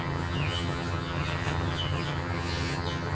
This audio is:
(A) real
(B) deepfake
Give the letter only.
B